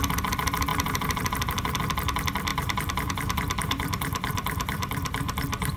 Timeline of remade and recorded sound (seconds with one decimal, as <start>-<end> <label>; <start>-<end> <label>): 0.0-0.7 recorded; 0.7-1.8 remade; 1.8-2.5 recorded; 2.5-5.8 remade